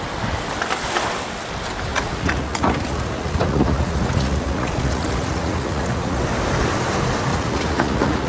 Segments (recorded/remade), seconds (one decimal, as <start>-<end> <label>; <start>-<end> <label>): 0.0-1.9 recorded; 1.9-6.2 remade; 6.2-7.3 recorded; 7.3-8.3 remade